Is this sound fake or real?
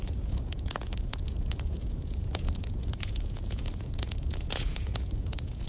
fake